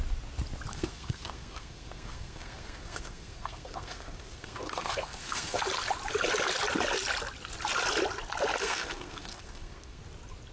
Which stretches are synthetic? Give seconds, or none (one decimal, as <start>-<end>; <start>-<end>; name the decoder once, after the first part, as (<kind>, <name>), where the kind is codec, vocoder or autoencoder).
0.7-5.6 (codec, SNAC); 8.6-10.0

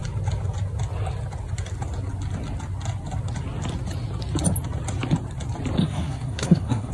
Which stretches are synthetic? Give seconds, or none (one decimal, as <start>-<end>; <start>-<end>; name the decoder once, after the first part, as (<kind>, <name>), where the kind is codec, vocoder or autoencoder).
5.8-6.9 (codec, SNAC)

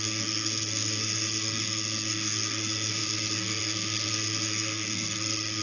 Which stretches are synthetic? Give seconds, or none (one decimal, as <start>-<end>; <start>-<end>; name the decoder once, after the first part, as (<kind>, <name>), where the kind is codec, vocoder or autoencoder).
0.0-5.6 (codec, SNAC)

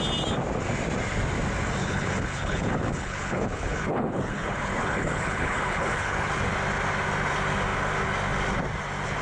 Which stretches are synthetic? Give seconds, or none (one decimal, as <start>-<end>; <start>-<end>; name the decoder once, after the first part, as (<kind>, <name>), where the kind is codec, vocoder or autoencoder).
1.8-6.3 (codec, HILCodec)

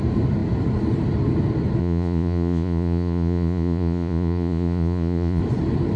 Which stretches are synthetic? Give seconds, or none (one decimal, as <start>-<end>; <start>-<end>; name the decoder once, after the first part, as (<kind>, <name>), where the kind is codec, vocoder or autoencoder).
1.8-5.4 (vocoder, Vocos)

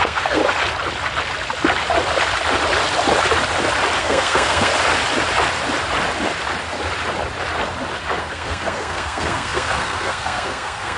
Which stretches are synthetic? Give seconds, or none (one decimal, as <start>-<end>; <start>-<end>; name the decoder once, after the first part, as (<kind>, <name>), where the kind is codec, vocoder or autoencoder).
0.0-0.4 (codec, SNAC); 4.0-4.7; 8.2-11.0